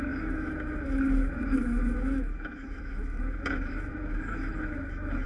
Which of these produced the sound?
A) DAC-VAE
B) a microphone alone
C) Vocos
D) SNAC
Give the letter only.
A